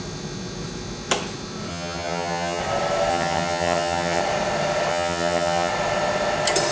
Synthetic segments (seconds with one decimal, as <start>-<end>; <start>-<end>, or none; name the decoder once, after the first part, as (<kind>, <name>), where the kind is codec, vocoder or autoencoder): 1.7-2.6 (vocoder, HiFi-GAN); 3.1-4.2; 4.9-5.7